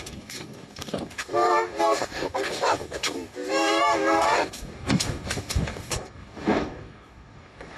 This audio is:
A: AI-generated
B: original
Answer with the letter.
A